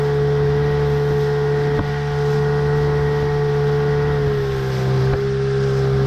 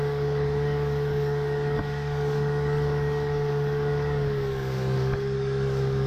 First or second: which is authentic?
first